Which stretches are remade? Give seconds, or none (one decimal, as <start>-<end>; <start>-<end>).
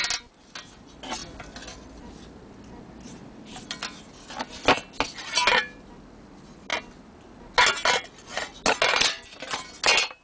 none